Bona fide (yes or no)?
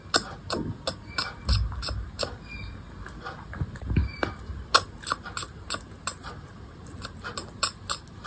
yes